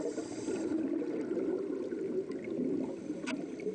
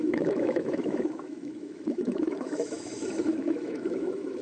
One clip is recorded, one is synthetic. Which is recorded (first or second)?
first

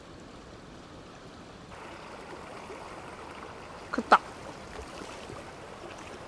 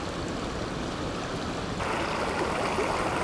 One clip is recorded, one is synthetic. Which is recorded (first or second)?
second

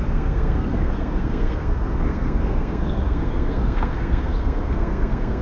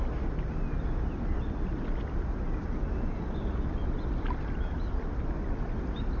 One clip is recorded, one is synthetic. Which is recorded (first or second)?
second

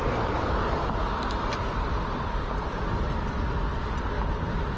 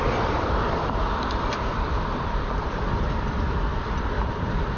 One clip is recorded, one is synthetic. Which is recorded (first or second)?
first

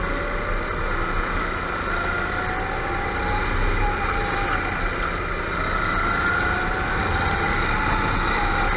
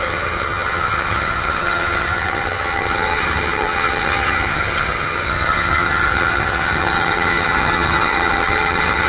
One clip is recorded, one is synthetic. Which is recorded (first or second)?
first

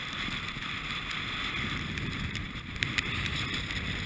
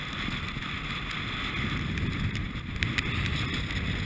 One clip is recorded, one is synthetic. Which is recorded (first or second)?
second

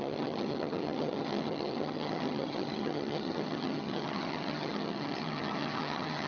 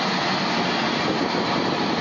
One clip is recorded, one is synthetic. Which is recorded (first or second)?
second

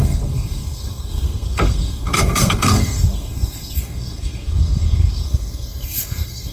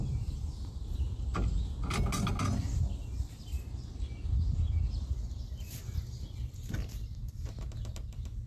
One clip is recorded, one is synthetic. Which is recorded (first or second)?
second